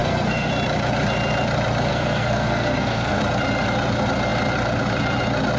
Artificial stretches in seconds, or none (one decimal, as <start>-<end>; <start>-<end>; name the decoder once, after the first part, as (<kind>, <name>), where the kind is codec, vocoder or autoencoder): 0.0-0.5 (codec, SNAC); 1.9-3.2